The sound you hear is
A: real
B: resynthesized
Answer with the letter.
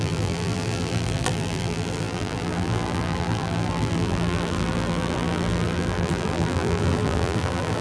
B